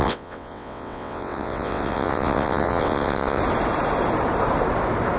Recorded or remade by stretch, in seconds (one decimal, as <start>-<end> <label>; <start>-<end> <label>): 0.0-3.4 remade; 3.4-5.2 recorded